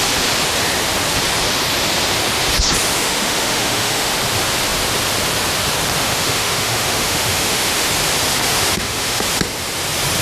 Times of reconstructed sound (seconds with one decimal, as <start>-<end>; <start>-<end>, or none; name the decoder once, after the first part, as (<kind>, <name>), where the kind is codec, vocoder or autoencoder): 3.0-4.1 (autoencoder, DAC-VAE); 6.0-7.9; 8.4-9.2